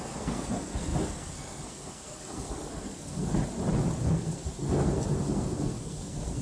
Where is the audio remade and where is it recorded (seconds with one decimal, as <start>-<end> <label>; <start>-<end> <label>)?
0.0-3.4 remade; 3.4-4.0 recorded; 4.0-6.4 remade